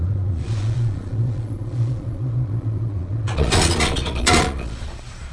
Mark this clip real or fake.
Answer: fake